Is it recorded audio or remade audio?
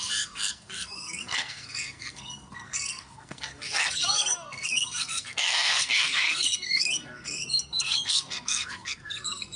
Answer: remade